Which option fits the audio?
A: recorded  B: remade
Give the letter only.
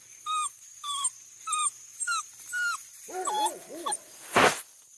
A